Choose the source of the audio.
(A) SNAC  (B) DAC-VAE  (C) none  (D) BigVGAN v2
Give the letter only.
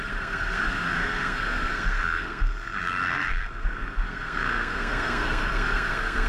A